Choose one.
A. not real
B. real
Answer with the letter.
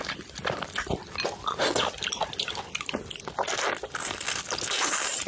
B